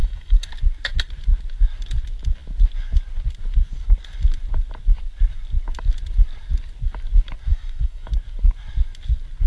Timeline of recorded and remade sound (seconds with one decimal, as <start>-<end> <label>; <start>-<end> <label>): 0.0-0.5 remade; 0.5-7.5 recorded; 7.5-8.1 remade; 8.1-9.5 recorded